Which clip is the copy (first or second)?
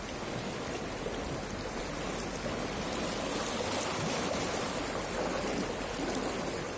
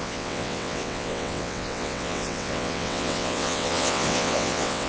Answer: second